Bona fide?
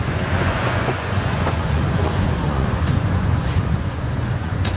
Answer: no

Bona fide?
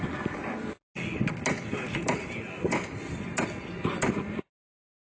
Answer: yes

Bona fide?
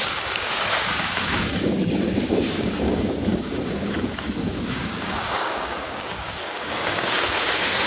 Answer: no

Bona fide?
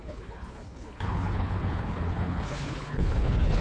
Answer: no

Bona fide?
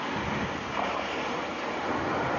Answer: yes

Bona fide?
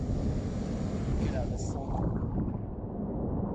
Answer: yes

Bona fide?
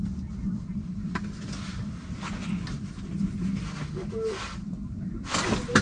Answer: yes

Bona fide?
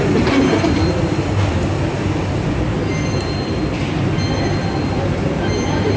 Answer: yes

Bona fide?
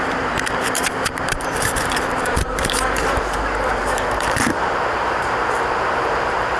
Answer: no